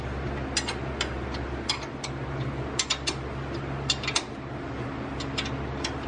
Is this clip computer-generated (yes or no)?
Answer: no